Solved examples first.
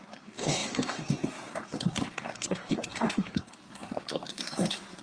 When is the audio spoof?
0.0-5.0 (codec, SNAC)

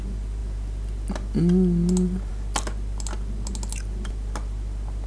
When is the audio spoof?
none

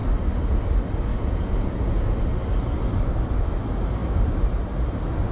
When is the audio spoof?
1.1-2.0 (vocoder, Vocos)

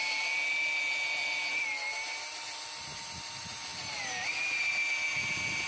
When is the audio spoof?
none

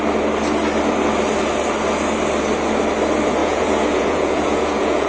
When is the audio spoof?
3.4-5.1 (vocoder, Vocos)

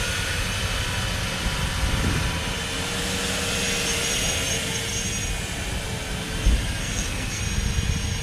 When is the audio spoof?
6.8-7.4 (codec, SNAC)

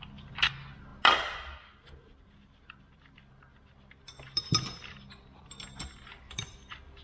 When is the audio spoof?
none